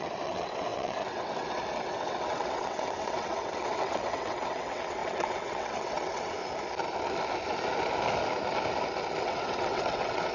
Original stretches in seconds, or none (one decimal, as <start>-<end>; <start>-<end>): 6.4-9.2